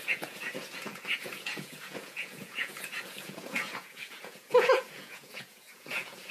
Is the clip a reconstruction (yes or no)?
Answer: yes